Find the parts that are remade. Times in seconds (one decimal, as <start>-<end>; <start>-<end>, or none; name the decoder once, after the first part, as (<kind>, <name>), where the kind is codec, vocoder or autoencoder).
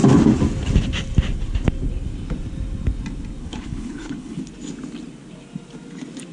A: 3.4-4.4 (codec, HILCodec)